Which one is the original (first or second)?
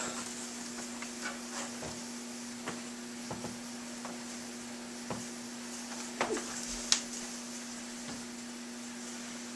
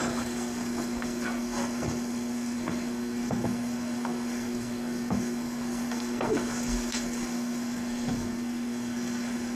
first